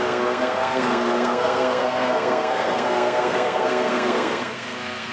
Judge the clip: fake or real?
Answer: fake